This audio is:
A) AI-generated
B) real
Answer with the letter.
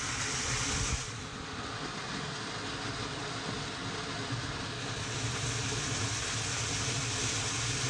B